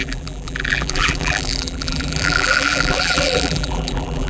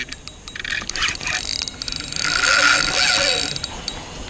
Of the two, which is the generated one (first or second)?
first